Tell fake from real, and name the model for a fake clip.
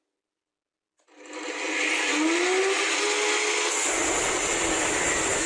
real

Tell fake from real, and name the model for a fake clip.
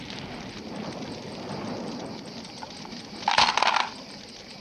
real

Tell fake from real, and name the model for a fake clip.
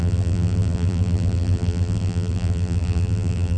fake, vocoder, BigVGAN v2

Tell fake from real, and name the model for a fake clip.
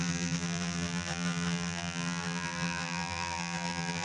fake, vocoder, BigVGAN v2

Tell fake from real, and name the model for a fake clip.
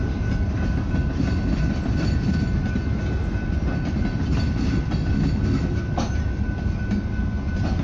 real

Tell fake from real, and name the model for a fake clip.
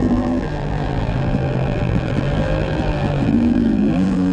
fake, vocoder, BigVGAN v2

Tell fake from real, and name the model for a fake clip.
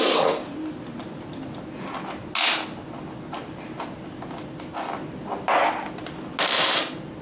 real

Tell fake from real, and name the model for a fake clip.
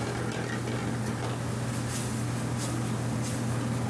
real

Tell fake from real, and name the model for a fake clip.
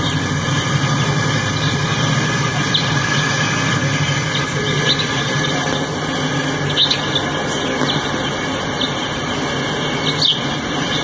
real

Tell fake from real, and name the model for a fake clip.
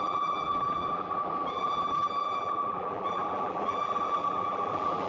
fake, vocoder, BigVGAN v2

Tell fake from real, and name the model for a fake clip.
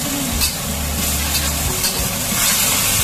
real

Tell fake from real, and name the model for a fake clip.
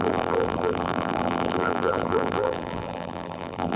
fake, vocoder, BigVGAN v2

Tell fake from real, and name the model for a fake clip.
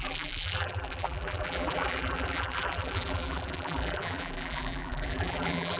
fake, vocoder, BigVGAN v2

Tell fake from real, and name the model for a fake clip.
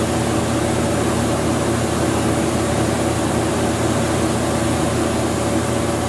real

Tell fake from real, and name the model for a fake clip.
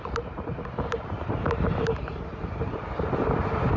fake, vocoder, BigVGAN v2